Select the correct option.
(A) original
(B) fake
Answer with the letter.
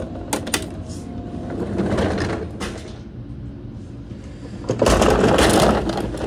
A